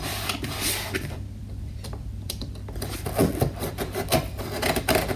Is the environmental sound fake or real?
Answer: fake